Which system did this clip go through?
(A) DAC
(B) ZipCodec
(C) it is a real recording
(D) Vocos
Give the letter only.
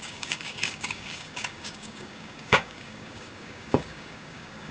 A